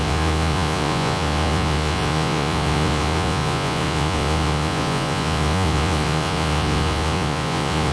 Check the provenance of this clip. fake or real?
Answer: fake